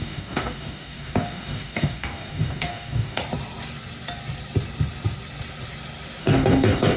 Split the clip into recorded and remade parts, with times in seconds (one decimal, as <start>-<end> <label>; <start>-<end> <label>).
0.0-3.2 remade; 3.2-6.2 recorded; 6.2-7.0 remade